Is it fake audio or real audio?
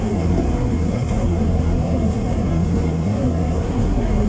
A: fake